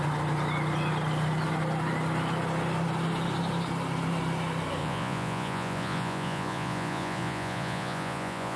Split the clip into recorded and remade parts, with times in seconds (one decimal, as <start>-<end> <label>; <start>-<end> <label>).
0.0-4.8 recorded; 4.8-8.6 remade